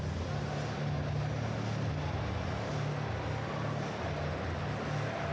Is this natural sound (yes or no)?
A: yes